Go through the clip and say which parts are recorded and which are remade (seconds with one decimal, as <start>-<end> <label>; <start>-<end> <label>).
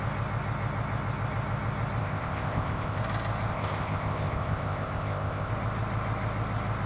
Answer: 0.0-2.0 recorded; 2.0-3.0 remade; 3.0-3.5 recorded; 3.5-5.5 remade; 5.5-6.9 recorded